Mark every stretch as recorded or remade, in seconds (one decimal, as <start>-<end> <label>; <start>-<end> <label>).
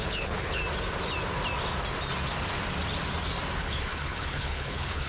0.0-0.6 remade; 0.6-3.6 recorded; 3.6-5.1 remade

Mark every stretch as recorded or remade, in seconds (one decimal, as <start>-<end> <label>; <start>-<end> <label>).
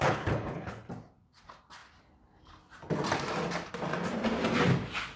0.0-0.9 remade; 0.9-5.2 recorded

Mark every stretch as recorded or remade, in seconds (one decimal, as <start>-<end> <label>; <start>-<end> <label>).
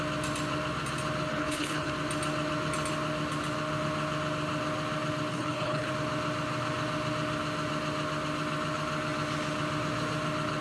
0.0-1.3 recorded; 1.3-1.9 remade; 1.9-5.3 recorded; 5.3-5.9 remade; 5.9-10.6 recorded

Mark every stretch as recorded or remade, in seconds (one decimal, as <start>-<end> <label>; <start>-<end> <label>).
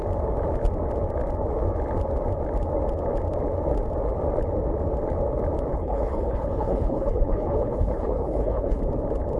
0.0-5.7 recorded; 5.7-8.8 remade; 8.8-9.4 recorded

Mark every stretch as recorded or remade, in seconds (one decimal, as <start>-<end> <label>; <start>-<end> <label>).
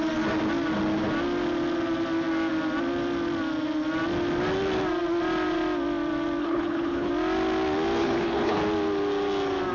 0.0-6.4 recorded; 6.4-7.1 remade; 7.1-8.0 recorded; 8.0-8.6 remade; 8.6-9.7 recorded